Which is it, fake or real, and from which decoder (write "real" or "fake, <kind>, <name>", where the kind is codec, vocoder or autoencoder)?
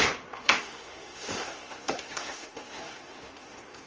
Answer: fake, codec, SNAC